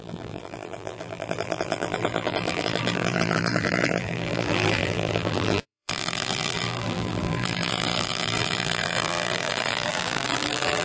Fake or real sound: fake